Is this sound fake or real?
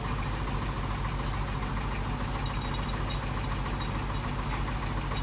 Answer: real